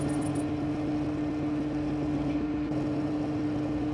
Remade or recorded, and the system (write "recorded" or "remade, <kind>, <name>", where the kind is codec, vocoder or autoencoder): recorded